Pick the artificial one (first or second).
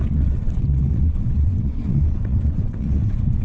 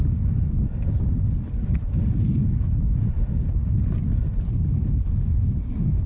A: first